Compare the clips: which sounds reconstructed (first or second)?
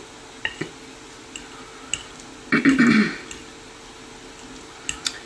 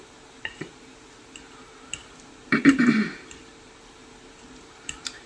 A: second